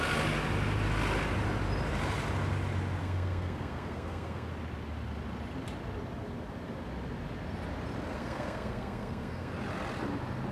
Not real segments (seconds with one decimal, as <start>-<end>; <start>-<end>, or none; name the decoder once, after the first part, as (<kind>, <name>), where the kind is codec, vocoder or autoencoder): 3.0-4.5 (codec, SNAC); 8.1-9.5